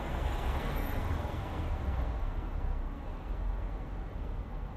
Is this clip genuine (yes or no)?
no